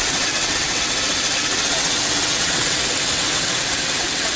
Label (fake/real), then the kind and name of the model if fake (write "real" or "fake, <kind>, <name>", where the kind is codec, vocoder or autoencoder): fake, vocoder, WaveNeXt